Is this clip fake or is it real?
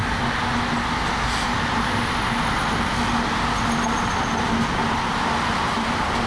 real